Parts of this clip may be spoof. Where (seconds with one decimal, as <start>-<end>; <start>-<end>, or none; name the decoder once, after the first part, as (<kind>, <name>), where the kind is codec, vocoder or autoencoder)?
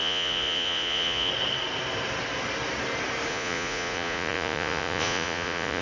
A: 0.0-1.3 (vocoder, Vocos); 3.3-5.8